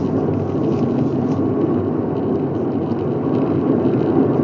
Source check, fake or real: real